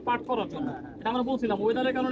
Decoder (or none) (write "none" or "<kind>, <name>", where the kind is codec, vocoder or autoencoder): none